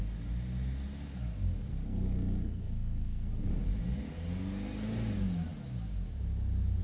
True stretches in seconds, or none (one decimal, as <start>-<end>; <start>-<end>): 0.0-1.7; 3.3-6.8